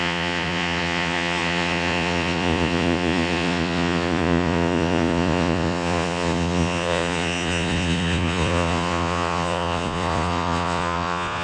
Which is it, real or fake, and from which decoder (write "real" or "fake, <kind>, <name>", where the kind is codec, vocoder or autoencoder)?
fake, vocoder, Vocos